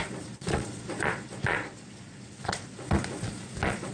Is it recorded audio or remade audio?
remade